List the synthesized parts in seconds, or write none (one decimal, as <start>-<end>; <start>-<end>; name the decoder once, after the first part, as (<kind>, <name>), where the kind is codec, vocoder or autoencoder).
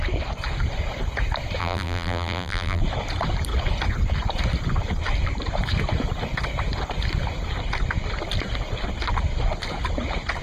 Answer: 1.6-2.8 (vocoder, BigVGAN v2)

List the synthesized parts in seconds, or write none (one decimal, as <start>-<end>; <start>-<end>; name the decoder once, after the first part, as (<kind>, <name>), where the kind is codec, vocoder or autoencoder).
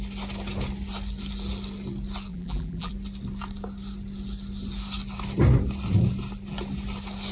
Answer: 2.3-2.9 (vocoder, BigVGAN v2)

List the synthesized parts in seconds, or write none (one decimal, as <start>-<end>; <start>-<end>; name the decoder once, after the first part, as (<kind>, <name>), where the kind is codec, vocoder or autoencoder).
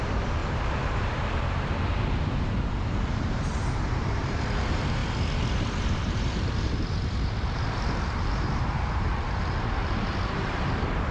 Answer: 0.0-11.1 (vocoder, BigVGAN v2)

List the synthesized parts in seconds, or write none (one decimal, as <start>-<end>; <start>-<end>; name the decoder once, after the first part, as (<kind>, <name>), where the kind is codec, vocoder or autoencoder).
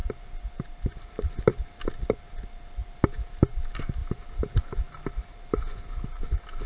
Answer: 0.0-1.3 (vocoder, BigVGAN v2); 2.8-3.5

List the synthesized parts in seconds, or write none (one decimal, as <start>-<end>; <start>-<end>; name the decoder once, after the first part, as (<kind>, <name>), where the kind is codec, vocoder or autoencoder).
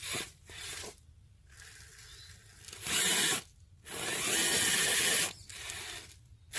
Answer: 0.0-1.5 (vocoder, BigVGAN v2)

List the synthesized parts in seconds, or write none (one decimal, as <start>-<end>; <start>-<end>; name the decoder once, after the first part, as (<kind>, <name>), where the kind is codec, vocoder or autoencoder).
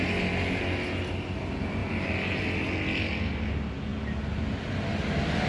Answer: 1.8-2.4 (vocoder, BigVGAN v2)